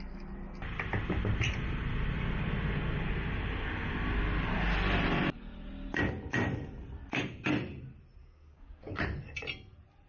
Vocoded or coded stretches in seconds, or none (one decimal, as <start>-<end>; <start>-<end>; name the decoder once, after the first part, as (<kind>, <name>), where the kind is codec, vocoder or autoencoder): 8.2-9.0 (codec, DAC)

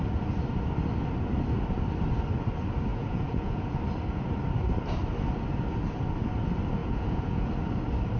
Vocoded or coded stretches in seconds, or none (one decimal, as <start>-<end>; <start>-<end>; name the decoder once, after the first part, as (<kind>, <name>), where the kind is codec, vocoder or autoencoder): 2.9-3.8 (vocoder, Vocos); 6.8-7.5

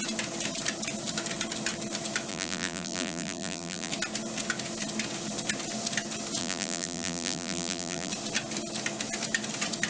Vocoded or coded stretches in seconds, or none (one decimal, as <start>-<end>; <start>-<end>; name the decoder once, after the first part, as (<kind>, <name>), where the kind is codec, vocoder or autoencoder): 2.3-3.9 (vocoder, BigVGAN v2); 6.4-8.1

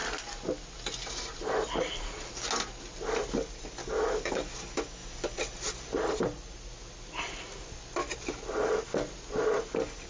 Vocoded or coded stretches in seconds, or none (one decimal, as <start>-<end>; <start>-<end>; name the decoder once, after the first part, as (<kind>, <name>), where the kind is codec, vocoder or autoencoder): 3.8-4.5 (codec, DAC)

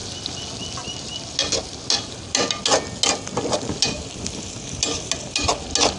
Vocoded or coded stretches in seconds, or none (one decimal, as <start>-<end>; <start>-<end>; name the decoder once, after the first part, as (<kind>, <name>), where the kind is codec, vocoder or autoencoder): none

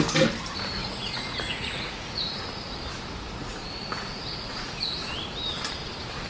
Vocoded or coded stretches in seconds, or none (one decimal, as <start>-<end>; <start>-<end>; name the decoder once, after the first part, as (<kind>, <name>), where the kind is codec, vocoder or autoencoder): 0.8-2.4 (vocoder, Vocos); 3.4-5.1